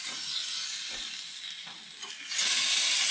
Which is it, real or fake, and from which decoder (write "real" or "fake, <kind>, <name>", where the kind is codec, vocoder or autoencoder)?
real